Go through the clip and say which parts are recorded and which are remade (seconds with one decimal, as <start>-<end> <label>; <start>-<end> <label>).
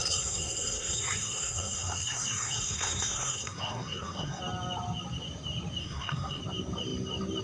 0.0-4.4 remade; 4.4-5.8 recorded; 5.8-6.4 remade; 6.4-7.4 recorded